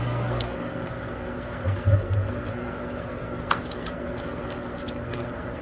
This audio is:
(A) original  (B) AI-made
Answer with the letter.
B